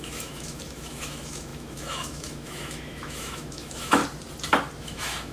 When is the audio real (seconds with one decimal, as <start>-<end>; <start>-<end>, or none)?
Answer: 4.0-4.8